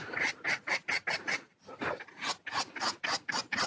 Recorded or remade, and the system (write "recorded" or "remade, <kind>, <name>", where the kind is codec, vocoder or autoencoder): recorded